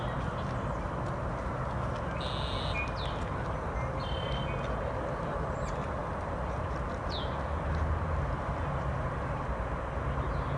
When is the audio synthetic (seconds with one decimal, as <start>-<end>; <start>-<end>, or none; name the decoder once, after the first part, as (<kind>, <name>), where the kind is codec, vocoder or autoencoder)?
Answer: none